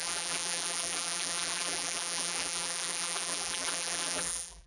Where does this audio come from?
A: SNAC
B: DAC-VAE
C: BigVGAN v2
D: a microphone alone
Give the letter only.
C